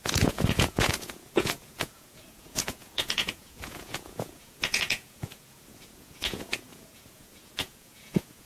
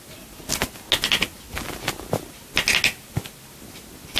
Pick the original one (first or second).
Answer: second